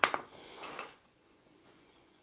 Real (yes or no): no